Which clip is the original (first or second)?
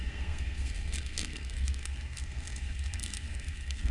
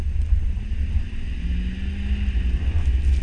second